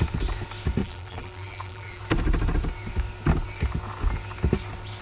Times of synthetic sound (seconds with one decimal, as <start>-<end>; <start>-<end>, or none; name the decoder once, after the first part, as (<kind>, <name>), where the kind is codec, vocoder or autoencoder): 0.8-2.0 (vocoder, BigVGAN v2)

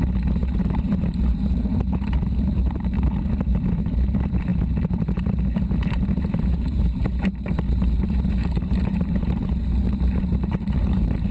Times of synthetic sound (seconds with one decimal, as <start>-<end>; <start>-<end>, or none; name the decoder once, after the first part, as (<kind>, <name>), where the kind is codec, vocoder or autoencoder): 0.0-11.3 (vocoder, BigVGAN v2)

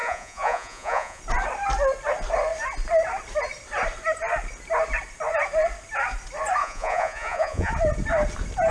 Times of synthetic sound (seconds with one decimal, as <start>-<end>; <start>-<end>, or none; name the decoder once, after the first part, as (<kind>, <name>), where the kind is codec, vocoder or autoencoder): 0.0-1.2 (vocoder, Vocos); 6.6-7.7

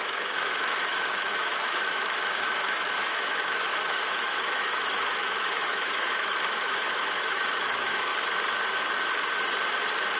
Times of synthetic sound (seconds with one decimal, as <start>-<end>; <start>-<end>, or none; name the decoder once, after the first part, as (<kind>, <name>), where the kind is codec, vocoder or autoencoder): 0.0-8.1 (autoencoder, DAC-VAE)

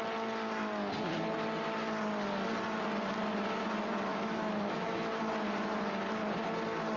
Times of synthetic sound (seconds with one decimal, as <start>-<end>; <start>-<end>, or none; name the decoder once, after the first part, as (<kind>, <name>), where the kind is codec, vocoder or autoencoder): 4.1-5.2 (autoencoder, DAC-VAE)